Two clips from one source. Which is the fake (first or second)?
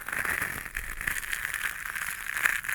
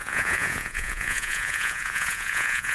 second